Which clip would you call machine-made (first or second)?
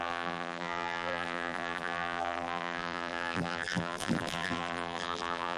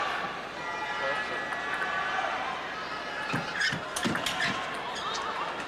first